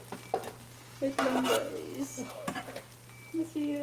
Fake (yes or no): no